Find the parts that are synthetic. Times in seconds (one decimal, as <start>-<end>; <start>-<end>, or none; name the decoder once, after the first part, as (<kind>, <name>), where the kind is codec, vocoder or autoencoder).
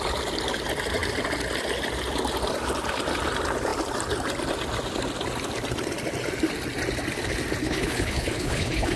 7.6-9.0 (codec, HILCodec)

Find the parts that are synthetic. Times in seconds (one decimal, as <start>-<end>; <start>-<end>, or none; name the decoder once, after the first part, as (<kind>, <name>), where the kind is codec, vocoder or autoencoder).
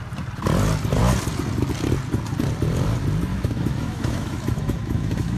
3.3-5.4 (autoencoder, DAC-VAE)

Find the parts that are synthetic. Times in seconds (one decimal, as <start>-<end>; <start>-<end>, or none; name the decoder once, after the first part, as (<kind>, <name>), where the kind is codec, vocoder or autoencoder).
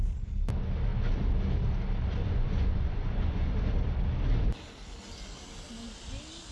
2.2-3.5 (vocoder, Vocos)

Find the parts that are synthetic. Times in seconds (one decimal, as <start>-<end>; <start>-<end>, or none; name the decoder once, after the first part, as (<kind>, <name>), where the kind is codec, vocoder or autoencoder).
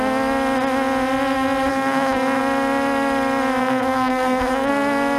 1.7-2.4 (codec, SNAC); 3.6-4.7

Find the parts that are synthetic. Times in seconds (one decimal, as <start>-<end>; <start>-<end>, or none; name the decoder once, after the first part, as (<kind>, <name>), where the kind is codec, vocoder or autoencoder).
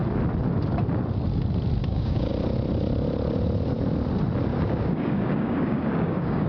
1.8-2.3 (codec, DAC); 4.5-6.5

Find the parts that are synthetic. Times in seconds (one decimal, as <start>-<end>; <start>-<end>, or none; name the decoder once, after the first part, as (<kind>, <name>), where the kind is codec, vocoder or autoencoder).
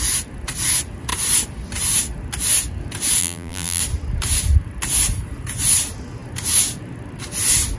3.2-3.8 (vocoder, BigVGAN v2)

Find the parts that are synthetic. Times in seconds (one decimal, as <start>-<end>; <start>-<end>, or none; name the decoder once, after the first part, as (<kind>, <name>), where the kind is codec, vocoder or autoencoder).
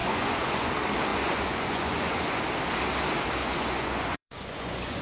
0.0-0.7 (vocoder, Vocos); 1.1-2.4; 3.4-5.0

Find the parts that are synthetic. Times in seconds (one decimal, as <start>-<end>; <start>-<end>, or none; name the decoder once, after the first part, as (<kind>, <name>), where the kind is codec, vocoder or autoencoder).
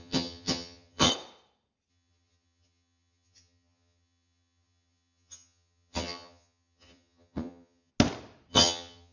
0.0-1.1 (vocoder, HiFi-GAN); 1.9-7.9; 8.5-9.1